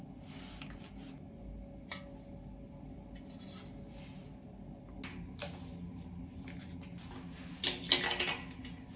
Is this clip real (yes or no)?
yes